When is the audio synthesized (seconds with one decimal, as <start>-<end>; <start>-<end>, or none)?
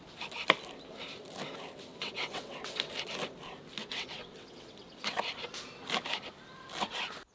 1.9-2.9; 3.8-5.2